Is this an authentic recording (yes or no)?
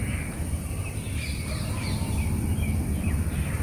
yes